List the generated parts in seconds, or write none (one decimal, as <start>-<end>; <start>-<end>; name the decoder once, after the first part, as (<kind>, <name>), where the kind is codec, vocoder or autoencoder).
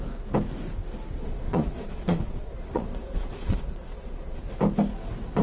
1.2-4.4 (vocoder, Vocos)